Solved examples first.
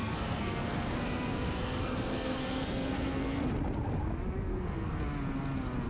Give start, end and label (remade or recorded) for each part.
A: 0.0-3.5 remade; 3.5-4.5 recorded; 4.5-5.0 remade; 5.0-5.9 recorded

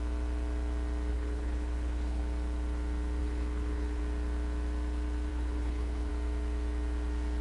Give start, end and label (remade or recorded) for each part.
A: 0.0-1.1 recorded; 1.1-2.2 remade; 2.2-3.2 recorded; 3.2-4.0 remade; 4.0-5.3 recorded; 5.3-6.1 remade; 6.1-7.4 recorded

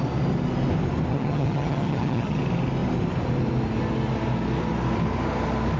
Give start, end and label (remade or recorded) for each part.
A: 0.0-1.1 recorded; 1.1-2.4 remade; 2.4-5.8 recorded

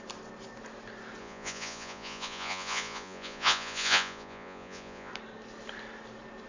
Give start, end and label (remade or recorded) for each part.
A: 0.0-1.2 recorded; 1.2-5.1 remade; 5.1-6.5 recorded

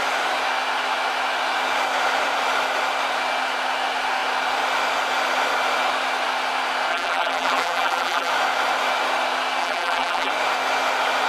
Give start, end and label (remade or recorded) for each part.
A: 0.0-6.9 recorded; 6.9-8.3 remade; 8.3-9.6 recorded; 9.6-10.3 remade; 10.3-11.3 recorded

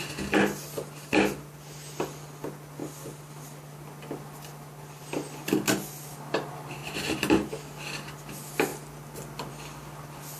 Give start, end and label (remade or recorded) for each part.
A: 0.0-6.8 recorded; 6.8-7.5 remade; 7.5-10.4 recorded

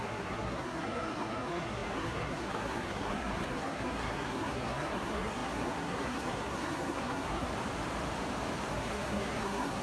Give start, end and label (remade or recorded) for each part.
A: 0.0-7.5 remade; 7.5-8.7 recorded; 8.7-9.8 remade